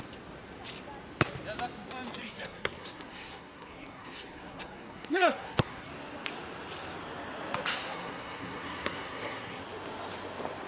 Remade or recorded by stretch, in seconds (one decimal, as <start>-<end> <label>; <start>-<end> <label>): 0.0-2.2 recorded; 2.2-5.9 remade; 5.9-7.7 recorded; 7.7-9.6 remade; 9.6-10.7 recorded